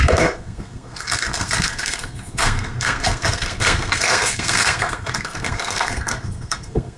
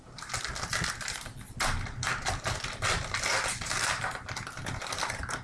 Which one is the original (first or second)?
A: second